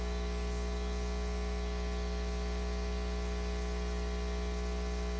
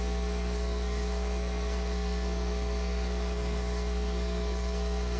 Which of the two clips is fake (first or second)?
second